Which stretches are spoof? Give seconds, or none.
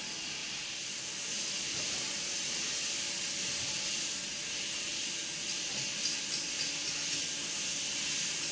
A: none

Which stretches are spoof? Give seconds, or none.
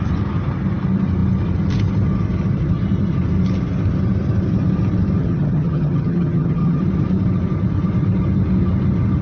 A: 5.2-6.8 (vocoder, HiFi-GAN)